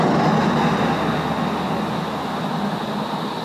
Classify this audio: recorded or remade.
recorded